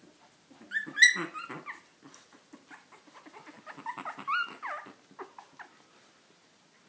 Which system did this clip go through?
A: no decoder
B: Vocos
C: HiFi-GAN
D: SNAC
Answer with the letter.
A